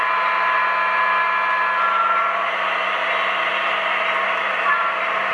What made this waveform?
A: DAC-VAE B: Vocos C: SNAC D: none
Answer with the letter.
D